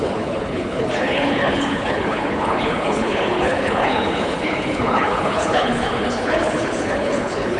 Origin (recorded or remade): remade